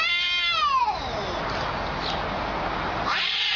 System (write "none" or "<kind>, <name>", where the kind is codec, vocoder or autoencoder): none